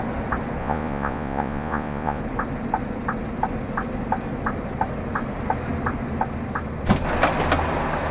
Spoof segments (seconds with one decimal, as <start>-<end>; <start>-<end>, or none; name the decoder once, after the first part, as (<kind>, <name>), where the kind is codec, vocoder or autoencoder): 0.6-2.2 (vocoder, Vocos)